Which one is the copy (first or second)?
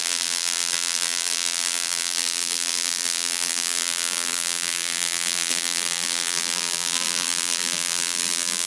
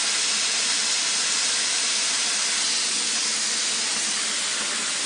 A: first